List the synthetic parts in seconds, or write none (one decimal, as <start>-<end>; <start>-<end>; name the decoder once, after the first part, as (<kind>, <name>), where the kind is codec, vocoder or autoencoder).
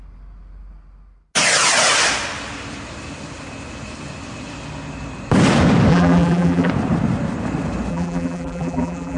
5.9-6.7 (vocoder, BigVGAN v2); 7.9-9.2